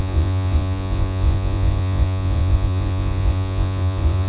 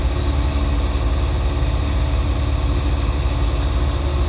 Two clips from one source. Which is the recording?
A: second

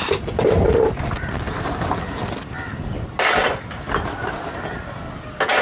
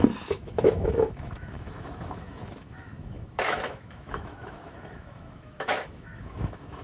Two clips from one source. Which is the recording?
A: first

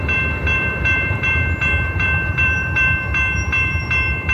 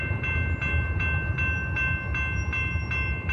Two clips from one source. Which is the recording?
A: second